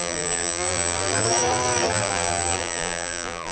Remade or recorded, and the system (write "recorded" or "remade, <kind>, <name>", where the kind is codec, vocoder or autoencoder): remade, vocoder, BigVGAN v2